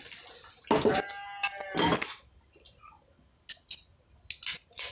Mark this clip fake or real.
real